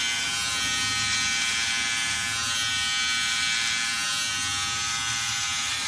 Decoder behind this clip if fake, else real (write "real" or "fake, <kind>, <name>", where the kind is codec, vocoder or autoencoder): real